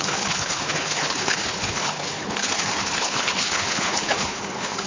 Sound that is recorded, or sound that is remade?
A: remade